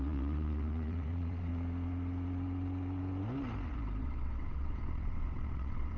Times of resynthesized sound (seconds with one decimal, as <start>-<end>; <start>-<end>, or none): 0.0-1.5; 4.0-6.0